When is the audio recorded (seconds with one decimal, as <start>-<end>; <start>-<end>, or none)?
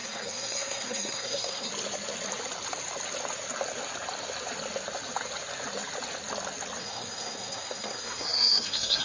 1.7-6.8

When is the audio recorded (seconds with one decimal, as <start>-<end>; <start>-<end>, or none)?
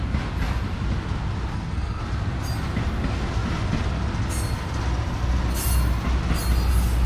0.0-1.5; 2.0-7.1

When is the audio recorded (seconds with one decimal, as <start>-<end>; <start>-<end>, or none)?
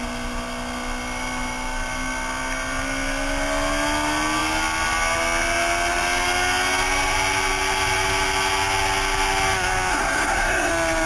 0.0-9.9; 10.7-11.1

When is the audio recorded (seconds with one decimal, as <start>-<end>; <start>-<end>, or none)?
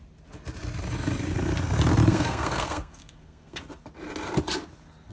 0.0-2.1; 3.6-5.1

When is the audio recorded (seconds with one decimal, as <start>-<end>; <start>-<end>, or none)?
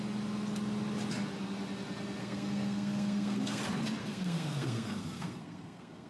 0.0-2.2; 3.6-4.0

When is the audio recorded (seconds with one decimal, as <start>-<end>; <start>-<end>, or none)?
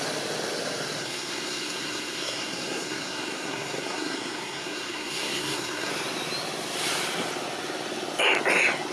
0.0-1.0; 5.9-8.9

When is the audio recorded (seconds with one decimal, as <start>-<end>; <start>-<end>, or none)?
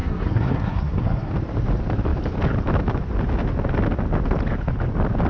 1.3-5.3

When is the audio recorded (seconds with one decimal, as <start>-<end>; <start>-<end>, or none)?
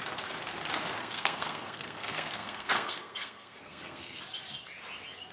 0.0-1.0; 4.2-5.3